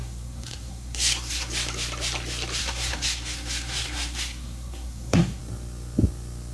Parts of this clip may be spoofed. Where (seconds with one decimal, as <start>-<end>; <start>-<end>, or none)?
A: 0.0-1.5; 2.6-5.4